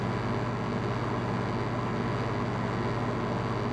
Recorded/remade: recorded